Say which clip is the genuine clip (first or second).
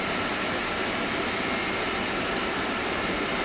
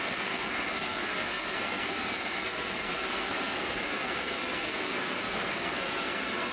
first